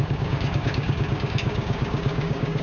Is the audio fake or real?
fake